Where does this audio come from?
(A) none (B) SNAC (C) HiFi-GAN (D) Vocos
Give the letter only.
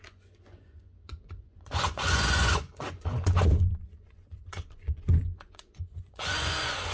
D